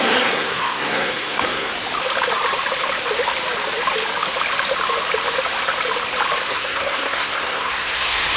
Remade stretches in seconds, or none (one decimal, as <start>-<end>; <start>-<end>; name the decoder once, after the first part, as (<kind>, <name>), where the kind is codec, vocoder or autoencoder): 0.0-1.7 (codec, SNAC); 6.5-8.4